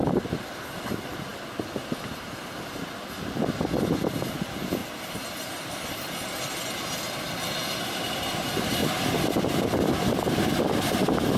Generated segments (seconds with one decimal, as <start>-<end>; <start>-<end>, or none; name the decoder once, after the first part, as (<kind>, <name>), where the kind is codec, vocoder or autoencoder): 8.8-10.8 (vocoder, BigVGAN v2)